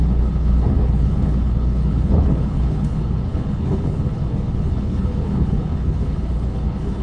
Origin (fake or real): fake